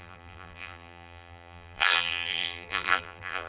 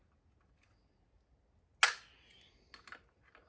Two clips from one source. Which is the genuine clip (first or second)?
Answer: second